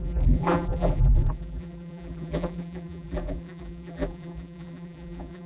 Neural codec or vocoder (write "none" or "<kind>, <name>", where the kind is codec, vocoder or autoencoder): vocoder, BigVGAN v2